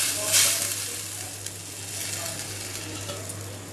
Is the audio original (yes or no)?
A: yes